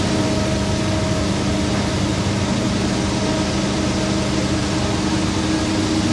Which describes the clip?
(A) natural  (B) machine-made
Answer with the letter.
A